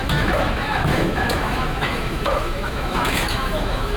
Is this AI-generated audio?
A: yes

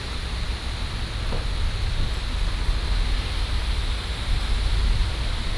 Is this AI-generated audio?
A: no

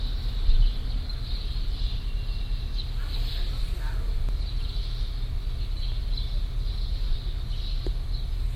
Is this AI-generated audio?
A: no